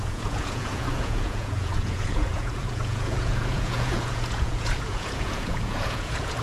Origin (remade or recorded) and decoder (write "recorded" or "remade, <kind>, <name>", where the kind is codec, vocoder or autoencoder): remade, vocoder, Vocos